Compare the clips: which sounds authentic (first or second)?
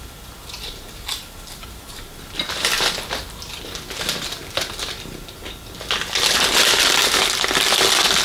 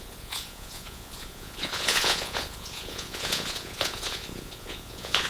first